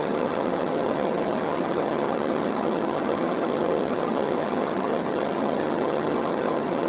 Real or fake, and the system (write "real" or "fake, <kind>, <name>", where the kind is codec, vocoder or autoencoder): fake, vocoder, HiFi-GAN